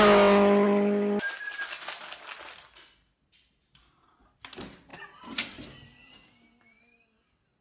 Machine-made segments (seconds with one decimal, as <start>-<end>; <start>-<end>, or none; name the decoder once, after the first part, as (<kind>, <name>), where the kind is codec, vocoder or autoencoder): none